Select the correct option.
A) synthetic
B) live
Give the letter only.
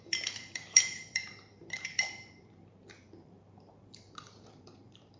A